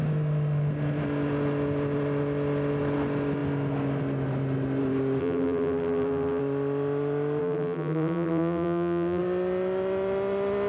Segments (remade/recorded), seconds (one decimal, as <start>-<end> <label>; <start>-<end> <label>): 0.0-5.2 recorded; 5.2-6.4 remade; 6.4-7.4 recorded; 7.4-9.2 remade; 9.2-10.7 recorded